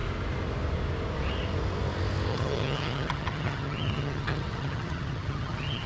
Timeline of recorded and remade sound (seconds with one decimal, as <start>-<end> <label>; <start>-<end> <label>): 0.0-2.3 recorded; 2.3-5.9 remade